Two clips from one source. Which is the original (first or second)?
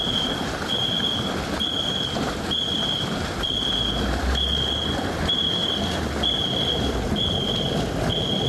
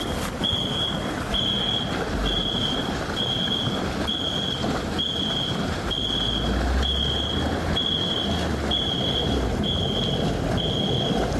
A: second